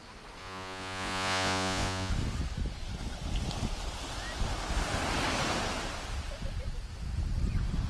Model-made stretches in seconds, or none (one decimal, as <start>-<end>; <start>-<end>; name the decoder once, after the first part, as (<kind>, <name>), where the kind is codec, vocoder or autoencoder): 0.4-2.1 (vocoder, Vocos)